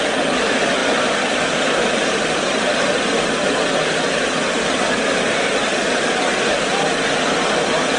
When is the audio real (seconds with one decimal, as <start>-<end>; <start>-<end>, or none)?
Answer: 0.0-8.0